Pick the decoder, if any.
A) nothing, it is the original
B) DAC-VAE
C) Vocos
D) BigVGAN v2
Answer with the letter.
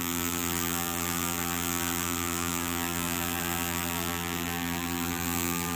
D